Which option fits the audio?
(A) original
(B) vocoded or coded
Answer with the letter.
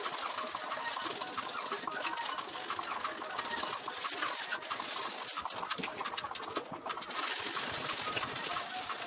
A